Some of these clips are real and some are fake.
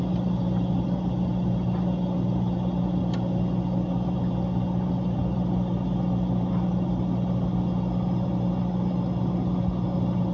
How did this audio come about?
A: real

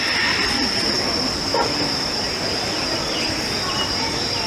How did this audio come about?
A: real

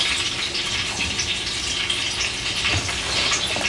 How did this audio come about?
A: real